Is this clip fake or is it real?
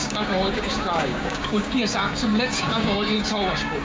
fake